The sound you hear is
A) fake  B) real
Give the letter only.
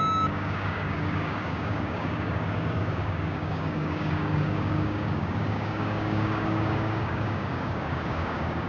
A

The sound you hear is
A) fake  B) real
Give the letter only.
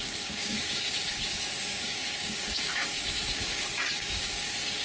A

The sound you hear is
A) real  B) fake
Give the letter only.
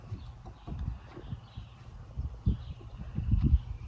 A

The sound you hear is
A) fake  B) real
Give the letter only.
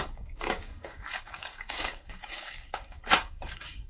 A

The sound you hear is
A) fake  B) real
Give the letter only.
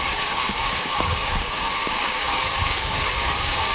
A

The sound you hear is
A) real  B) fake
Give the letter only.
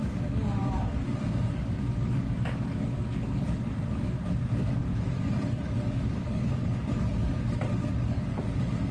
B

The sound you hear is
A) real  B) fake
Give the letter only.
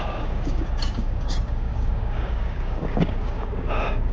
B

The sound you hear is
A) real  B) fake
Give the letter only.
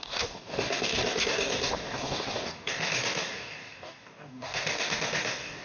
B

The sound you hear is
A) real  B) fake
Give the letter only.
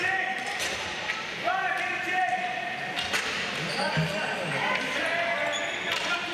A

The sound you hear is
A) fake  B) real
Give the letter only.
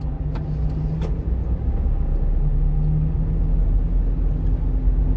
B